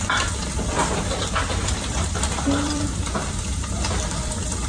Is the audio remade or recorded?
remade